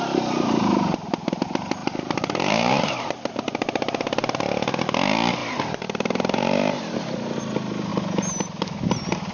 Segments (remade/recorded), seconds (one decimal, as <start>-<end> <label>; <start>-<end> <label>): 0.0-1.8 recorded; 1.8-4.7 remade; 4.7-5.4 recorded; 5.4-7.1 remade; 7.1-9.3 recorded